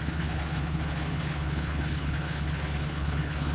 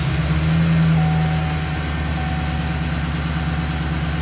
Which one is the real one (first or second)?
second